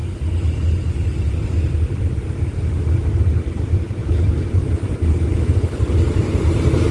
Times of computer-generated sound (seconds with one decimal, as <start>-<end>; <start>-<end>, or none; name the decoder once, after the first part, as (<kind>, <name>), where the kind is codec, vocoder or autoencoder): 0.0-1.4 (vocoder, BigVGAN v2); 4.0-4.7